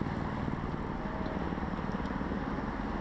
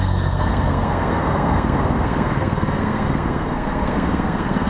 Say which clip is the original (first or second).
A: first